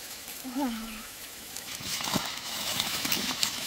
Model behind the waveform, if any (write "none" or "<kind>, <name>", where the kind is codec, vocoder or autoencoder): autoencoder, DAC-VAE